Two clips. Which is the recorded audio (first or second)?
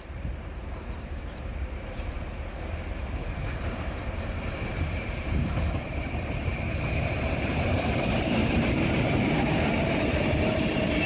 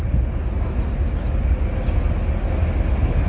second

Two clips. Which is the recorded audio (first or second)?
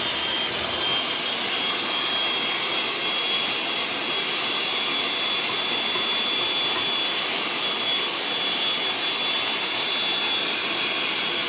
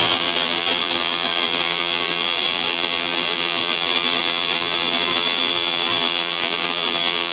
first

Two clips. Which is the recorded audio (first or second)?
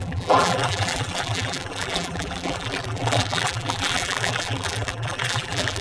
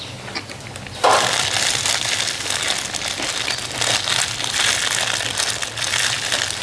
second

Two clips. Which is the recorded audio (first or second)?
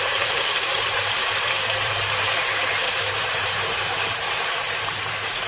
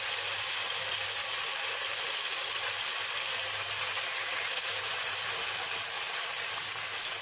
second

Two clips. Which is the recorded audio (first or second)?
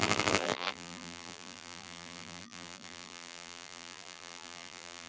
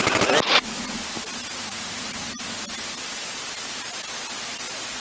second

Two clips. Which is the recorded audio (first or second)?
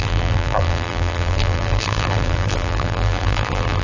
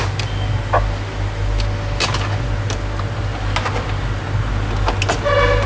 second